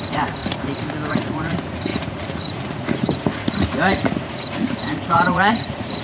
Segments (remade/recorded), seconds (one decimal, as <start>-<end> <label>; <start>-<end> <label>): 0.0-0.4 remade; 0.4-1.1 recorded; 1.1-6.0 remade